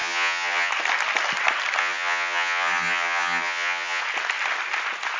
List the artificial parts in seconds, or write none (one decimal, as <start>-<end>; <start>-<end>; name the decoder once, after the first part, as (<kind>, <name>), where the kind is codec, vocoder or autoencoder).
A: 0.0-0.7 (vocoder, HiFi-GAN); 1.8-4.0